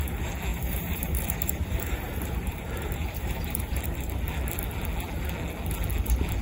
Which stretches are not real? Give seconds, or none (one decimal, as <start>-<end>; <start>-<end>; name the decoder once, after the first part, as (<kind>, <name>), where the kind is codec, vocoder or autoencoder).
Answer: 0.5-4.1 (vocoder, BigVGAN v2)